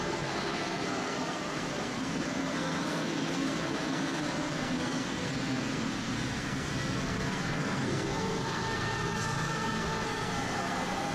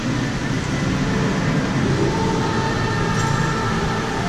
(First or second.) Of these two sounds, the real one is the second